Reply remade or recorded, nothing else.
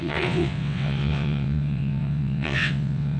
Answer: remade